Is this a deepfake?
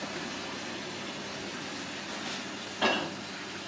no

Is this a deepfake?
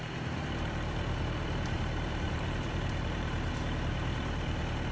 yes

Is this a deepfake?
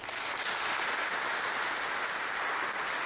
no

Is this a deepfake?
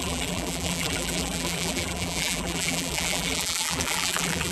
yes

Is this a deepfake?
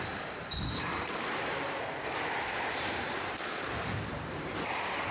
yes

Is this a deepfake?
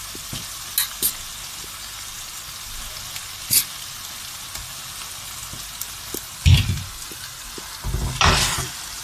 no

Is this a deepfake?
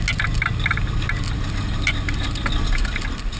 no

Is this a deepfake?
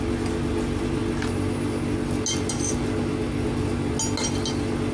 no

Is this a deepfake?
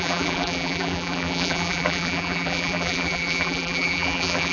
yes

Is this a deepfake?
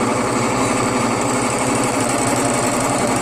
yes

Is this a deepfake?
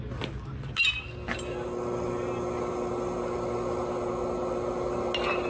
no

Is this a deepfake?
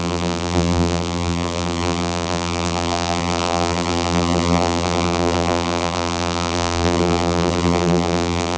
yes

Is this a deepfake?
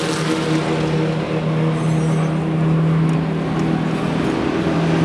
no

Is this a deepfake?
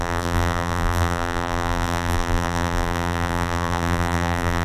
yes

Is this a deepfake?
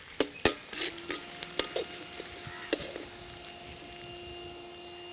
no